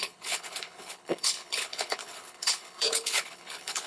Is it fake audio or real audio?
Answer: fake